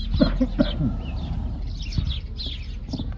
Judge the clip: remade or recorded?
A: recorded